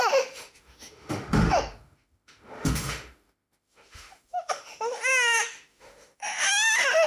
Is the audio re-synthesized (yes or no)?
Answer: yes